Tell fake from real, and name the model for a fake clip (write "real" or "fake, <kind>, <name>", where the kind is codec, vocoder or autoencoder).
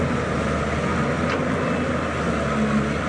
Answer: real